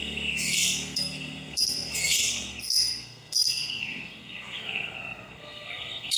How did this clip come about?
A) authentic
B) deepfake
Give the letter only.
B